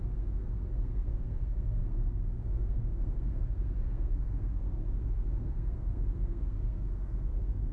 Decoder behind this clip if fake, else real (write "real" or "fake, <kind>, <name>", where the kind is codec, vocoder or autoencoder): fake, codec, SNAC